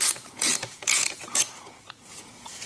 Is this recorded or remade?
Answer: remade